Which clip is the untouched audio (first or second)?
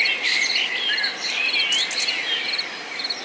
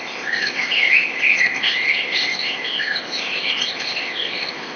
first